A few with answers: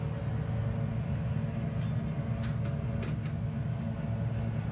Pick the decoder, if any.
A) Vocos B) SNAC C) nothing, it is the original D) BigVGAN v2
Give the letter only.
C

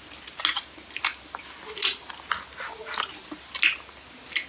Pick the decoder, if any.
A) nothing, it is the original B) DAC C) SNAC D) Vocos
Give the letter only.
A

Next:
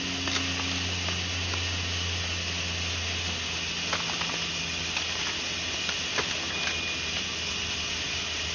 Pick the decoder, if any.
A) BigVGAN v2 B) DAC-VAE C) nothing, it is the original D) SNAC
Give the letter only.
C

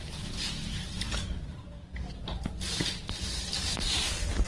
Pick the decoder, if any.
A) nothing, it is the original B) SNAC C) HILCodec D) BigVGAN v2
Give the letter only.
A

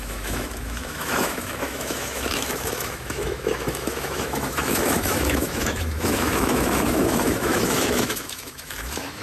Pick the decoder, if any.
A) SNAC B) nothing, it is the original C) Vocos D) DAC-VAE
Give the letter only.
D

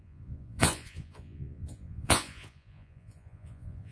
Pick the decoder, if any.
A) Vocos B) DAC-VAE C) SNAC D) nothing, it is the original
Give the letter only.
A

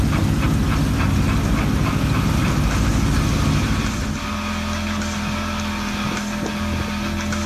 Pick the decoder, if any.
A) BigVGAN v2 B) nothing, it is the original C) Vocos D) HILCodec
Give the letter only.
B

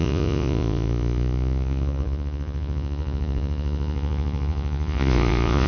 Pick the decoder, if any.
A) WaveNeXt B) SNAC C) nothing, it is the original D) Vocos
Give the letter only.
D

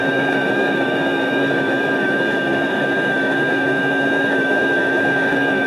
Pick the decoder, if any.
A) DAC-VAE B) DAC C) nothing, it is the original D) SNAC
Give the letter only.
A